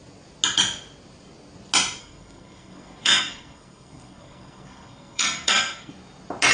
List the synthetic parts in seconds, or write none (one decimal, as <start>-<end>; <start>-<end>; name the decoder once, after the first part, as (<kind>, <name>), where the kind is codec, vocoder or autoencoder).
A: 2.0-5.9 (codec, SNAC)